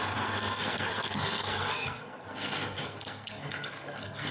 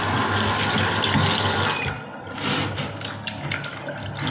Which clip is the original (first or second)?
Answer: second